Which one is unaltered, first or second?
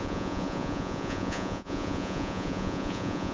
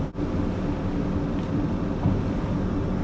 second